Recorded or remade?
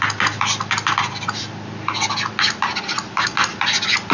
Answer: recorded